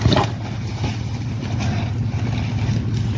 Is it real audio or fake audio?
real